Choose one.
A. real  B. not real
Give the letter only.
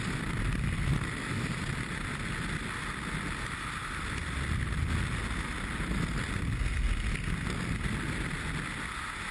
A